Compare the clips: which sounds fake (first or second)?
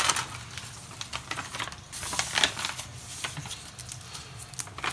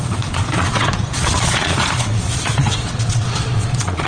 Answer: second